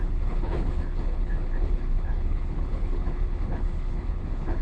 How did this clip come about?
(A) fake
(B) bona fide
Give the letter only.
A